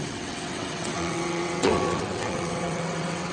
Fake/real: fake